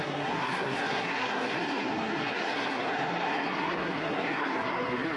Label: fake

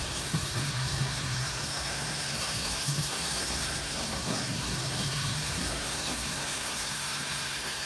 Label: fake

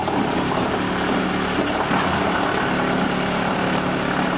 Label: real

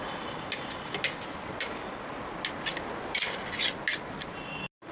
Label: real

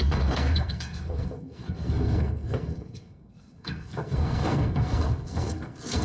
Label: fake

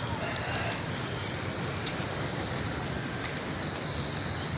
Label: real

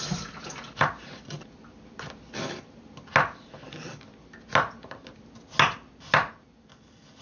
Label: real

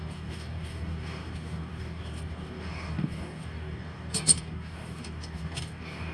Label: fake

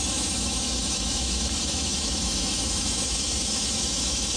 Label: fake